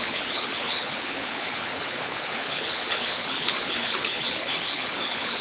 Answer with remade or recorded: remade